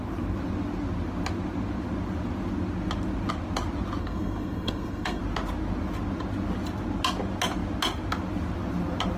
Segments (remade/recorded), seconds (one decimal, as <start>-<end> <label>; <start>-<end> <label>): 0.0-4.0 recorded; 4.0-5.2 remade; 5.2-9.2 recorded